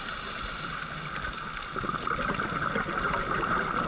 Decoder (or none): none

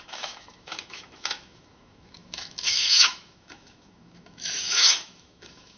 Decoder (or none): autoencoder, DAC-VAE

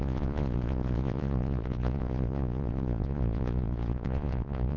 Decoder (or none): vocoder, Vocos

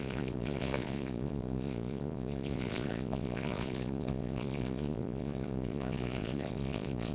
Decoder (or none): vocoder, Vocos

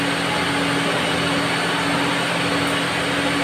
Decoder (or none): none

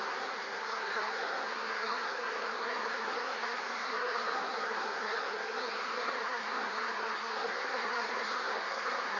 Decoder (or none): codec, SNAC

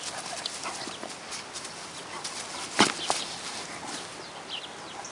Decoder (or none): none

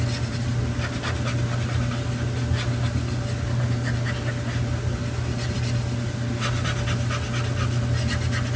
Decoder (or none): none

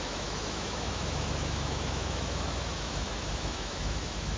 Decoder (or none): autoencoder, DAC-VAE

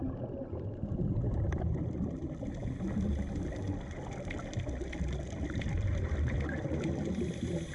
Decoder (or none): none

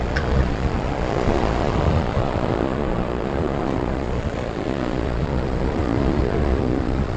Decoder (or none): vocoder, Vocos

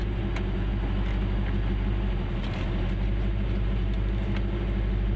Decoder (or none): none